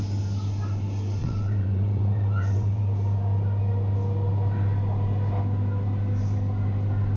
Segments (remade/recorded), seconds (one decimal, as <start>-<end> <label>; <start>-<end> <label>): 0.0-1.2 recorded; 1.2-2.8 remade; 2.8-7.2 recorded